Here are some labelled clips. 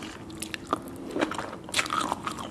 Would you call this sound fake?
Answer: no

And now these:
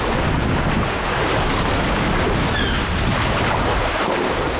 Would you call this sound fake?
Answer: no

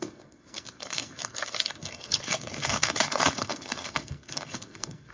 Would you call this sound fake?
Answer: yes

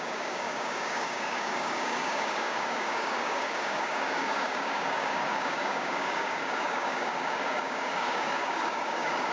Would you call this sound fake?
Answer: yes